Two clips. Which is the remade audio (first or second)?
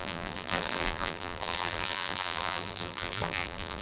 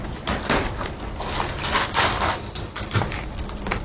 first